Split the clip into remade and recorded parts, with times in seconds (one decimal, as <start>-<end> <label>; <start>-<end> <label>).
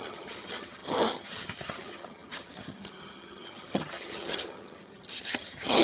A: 0.0-5.8 remade